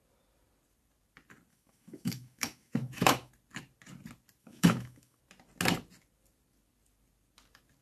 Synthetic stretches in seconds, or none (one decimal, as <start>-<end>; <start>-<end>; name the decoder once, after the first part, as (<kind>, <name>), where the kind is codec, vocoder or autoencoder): 1.5-3.3 (autoencoder, DAC-VAE); 4.4-5.2